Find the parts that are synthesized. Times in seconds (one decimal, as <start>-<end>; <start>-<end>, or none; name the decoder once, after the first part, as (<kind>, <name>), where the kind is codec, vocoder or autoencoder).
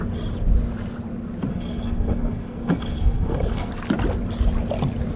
1.5-3.7 (codec, SNAC)